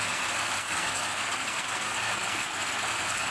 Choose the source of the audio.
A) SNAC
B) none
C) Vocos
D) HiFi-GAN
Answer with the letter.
A